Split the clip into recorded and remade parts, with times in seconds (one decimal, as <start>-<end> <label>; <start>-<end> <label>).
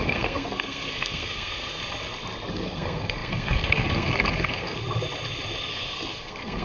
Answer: 0.0-1.8 remade; 1.8-2.5 recorded; 2.5-4.8 remade; 4.8-5.7 recorded; 5.7-6.6 remade